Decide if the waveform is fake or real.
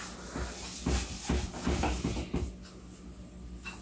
real